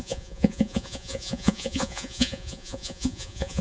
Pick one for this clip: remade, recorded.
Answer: remade